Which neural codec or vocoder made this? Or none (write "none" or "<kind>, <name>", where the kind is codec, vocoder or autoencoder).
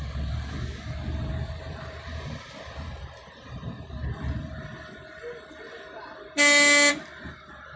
none